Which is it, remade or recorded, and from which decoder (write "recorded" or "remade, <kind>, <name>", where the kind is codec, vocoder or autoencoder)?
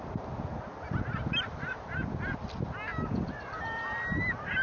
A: recorded